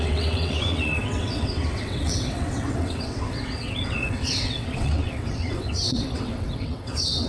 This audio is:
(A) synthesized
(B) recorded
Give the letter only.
A